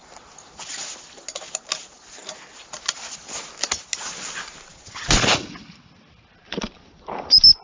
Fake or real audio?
real